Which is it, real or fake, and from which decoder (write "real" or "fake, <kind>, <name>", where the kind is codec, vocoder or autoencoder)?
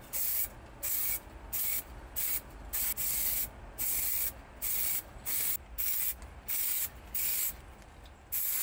real